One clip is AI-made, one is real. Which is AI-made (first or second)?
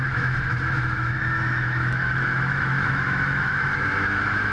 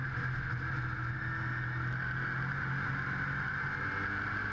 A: first